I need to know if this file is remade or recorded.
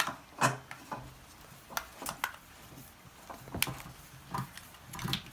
recorded